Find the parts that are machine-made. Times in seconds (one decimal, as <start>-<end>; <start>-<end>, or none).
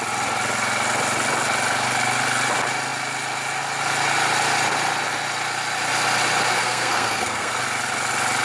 6.5-7.6